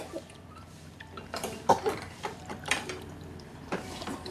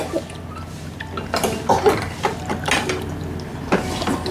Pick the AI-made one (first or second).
first